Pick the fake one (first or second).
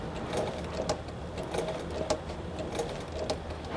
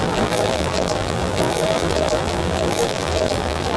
second